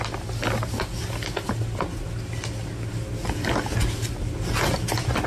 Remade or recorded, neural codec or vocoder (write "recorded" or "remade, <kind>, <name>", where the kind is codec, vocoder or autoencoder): recorded